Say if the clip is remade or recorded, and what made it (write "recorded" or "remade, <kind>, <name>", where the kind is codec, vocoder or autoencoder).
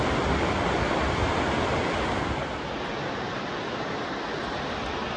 recorded